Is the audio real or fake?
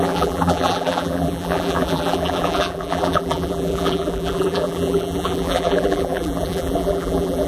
fake